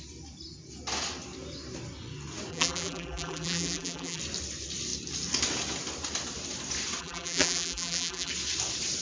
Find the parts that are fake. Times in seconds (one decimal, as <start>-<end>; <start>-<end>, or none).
2.5-4.2; 7.0-8.3

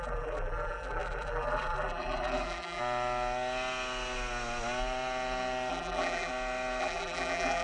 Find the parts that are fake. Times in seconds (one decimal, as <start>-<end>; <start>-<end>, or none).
0.0-2.8; 5.7-6.3; 6.8-7.6

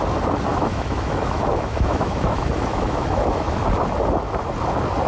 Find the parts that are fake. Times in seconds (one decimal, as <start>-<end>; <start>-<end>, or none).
0.5-3.6